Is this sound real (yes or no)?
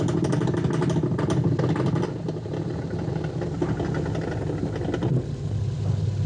yes